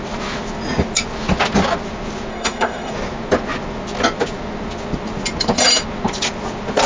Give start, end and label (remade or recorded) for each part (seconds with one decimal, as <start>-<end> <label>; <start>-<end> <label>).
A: 0.0-2.3 recorded; 2.3-2.9 remade; 2.9-6.9 recorded